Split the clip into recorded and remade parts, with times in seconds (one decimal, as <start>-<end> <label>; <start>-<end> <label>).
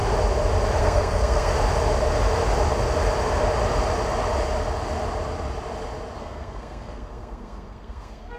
0.0-0.8 recorded; 0.8-1.5 remade; 1.5-6.2 recorded; 6.2-8.4 remade